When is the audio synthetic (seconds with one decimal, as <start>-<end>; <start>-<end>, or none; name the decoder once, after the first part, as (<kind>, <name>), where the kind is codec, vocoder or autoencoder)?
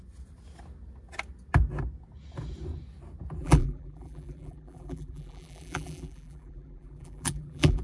3.4-7.8 (vocoder, BigVGAN v2)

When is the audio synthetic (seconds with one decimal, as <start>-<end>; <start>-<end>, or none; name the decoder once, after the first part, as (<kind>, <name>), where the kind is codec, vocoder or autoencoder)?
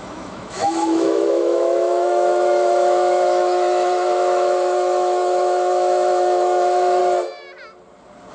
0.0-7.0 (autoencoder, DAC-VAE)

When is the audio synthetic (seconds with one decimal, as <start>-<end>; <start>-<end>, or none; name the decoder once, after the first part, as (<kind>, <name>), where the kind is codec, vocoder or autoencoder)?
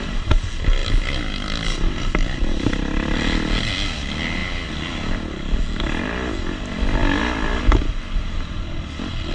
none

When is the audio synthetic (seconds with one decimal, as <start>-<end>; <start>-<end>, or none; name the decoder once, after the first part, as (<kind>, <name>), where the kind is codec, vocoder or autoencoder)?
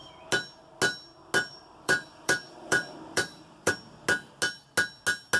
1.5-3.7 (vocoder, BigVGAN v2)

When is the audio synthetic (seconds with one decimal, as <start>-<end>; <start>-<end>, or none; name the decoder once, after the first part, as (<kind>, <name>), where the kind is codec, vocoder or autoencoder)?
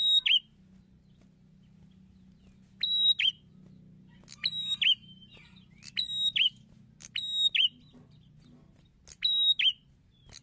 none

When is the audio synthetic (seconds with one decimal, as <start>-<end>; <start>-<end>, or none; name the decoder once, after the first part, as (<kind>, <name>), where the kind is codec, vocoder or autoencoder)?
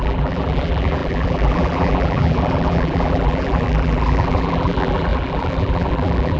0.0-6.4 (vocoder, BigVGAN v2)